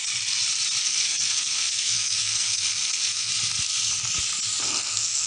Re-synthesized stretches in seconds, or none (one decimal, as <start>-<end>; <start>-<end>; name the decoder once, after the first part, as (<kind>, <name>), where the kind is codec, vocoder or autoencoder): 0.8-3.3 (codec, SNAC); 4.6-5.3